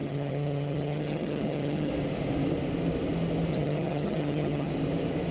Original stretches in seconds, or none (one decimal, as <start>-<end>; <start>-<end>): 1.9-3.5; 4.7-5.3